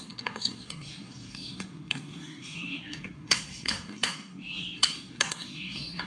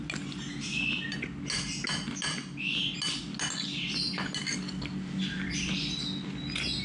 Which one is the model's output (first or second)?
first